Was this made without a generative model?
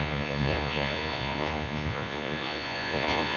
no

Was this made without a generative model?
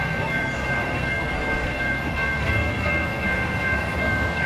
no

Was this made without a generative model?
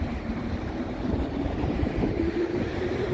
no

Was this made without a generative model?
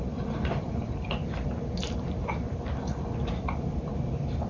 no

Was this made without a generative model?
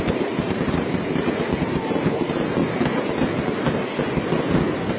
yes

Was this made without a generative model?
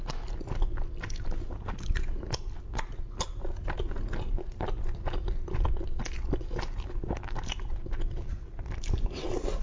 yes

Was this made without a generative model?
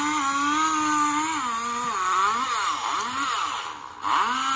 yes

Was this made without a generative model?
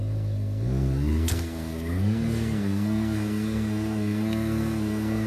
no